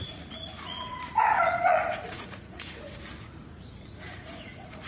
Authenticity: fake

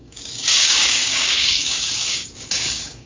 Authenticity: fake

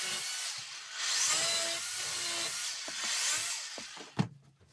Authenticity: real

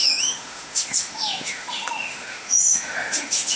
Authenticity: fake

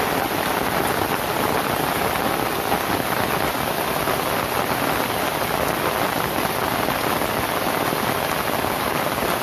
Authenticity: real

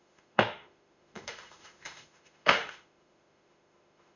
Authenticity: fake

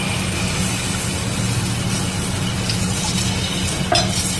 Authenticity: real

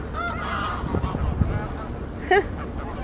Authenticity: real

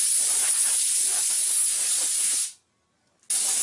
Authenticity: real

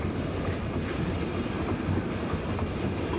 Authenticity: real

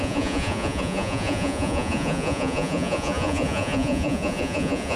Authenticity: fake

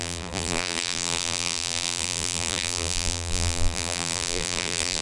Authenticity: fake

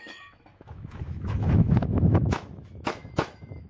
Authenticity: fake